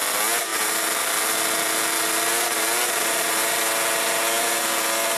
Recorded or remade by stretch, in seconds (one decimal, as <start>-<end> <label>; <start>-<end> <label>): 0.0-5.2 recorded